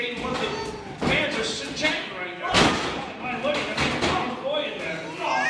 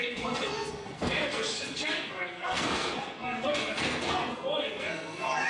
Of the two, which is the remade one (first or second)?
second